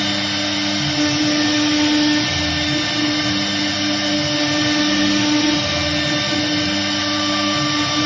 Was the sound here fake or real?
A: real